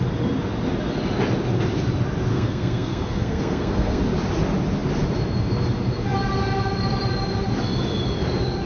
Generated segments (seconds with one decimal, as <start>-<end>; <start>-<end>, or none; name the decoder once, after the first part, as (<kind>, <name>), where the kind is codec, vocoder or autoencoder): 2.3-4.0 (codec, SNAC)